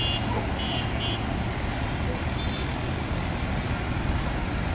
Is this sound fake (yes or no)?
no